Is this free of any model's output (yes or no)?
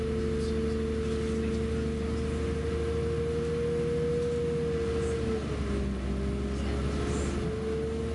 yes